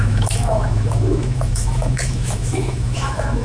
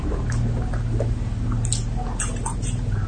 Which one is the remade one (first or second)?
first